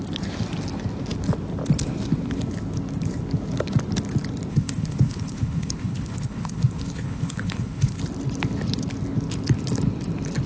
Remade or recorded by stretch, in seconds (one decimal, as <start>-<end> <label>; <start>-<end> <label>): 0.0-4.5 recorded; 4.5-8.0 remade; 8.0-10.5 recorded